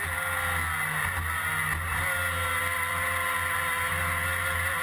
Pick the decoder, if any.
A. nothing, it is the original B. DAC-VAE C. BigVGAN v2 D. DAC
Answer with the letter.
A